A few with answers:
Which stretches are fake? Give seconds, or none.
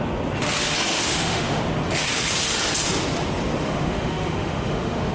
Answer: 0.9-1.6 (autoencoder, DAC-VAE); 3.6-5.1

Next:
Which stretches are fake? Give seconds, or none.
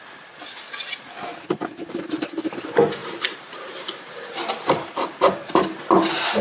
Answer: 1.3-2.2 (vocoder, BigVGAN v2); 3.0-5.8